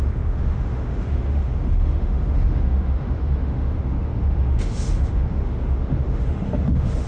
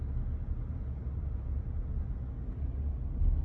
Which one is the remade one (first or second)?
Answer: first